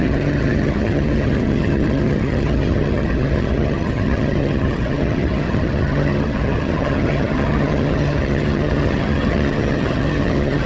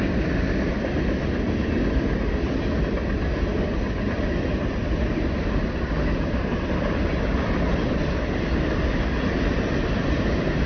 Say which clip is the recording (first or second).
second